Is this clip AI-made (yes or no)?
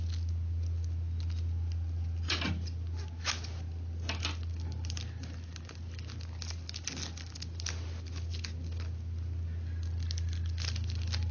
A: no